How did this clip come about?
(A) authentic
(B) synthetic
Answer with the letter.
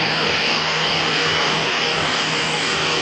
B